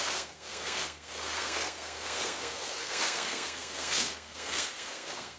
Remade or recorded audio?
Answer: remade